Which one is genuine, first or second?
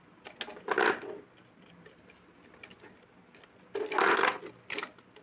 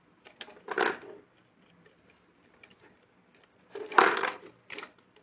first